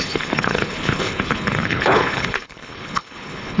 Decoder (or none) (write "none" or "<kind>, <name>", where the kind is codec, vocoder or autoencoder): codec, HILCodec